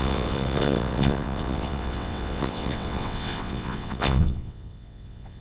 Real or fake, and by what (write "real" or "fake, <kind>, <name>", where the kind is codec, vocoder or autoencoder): fake, vocoder, WaveNeXt